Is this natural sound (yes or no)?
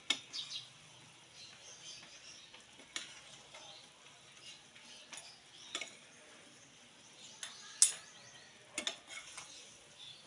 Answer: yes